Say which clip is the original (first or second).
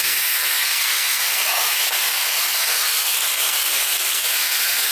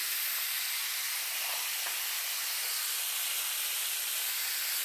second